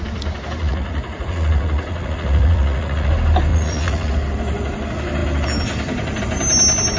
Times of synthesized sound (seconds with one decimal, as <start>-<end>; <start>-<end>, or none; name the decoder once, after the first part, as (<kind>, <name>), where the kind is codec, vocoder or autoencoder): 0.6-3.1 (vocoder, Vocos); 3.5-4.1